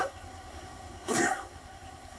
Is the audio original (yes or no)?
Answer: no